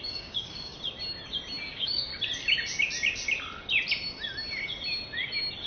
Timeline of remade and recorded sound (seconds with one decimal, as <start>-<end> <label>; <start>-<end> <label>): 0.0-0.7 remade; 0.7-1.6 recorded; 1.6-2.1 remade; 2.1-5.7 recorded